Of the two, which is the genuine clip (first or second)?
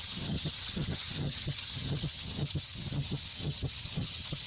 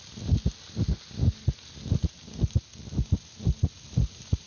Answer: second